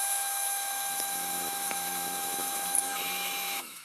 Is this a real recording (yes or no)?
no